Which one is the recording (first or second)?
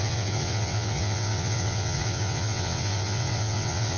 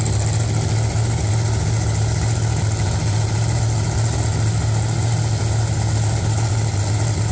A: second